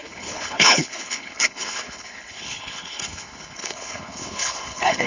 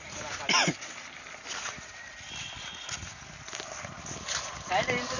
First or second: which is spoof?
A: first